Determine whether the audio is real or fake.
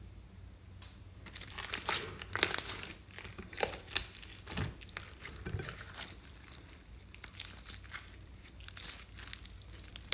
real